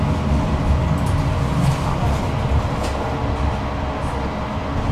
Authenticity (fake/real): real